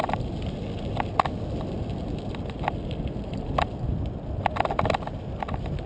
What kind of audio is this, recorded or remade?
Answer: recorded